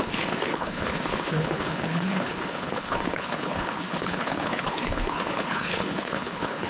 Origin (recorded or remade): remade